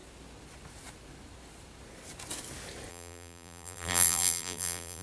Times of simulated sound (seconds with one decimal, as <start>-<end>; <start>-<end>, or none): 2.9-5.0